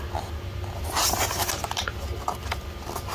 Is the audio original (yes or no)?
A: yes